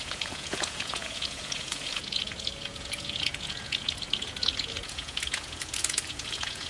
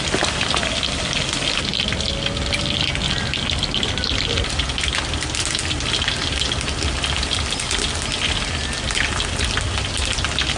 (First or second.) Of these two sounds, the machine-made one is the first